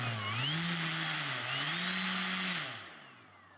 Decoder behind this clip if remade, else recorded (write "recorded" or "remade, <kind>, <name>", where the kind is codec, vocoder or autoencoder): recorded